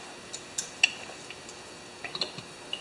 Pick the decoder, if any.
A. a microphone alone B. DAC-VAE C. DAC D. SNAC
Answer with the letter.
A